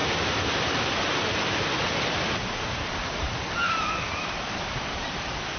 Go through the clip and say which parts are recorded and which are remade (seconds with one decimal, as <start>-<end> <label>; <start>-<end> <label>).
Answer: 0.0-5.6 recorded

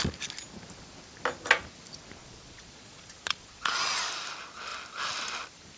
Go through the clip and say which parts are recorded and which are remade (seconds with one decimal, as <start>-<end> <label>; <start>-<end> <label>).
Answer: 0.0-2.2 recorded; 2.2-4.1 remade; 4.1-5.8 recorded

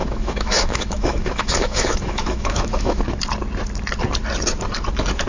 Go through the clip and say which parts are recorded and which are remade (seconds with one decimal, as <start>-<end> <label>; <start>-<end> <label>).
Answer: 0.0-3.0 remade; 3.0-5.3 recorded

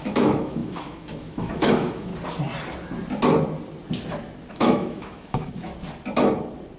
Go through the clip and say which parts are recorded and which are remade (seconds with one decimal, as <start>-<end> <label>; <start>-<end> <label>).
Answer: 0.0-2.1 remade; 2.1-4.5 recorded; 4.5-5.7 remade; 5.7-6.8 recorded

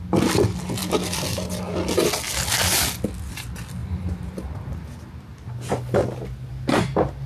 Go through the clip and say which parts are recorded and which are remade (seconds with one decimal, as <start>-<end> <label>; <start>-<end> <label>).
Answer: 0.0-3.8 recorded; 3.8-4.4 remade; 4.4-7.3 recorded

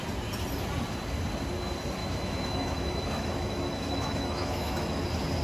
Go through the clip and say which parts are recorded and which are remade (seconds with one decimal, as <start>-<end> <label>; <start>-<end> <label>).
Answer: 0.0-2.0 recorded; 2.0-5.0 remade; 5.0-5.4 recorded

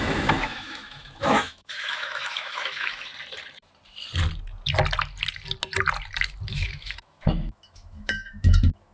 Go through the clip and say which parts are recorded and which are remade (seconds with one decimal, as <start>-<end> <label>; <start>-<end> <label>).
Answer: 0.0-3.1 remade; 3.1-6.5 recorded; 6.5-8.9 remade

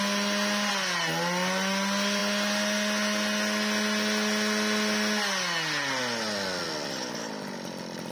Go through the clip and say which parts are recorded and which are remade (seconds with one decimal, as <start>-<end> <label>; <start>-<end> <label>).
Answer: 0.0-8.1 recorded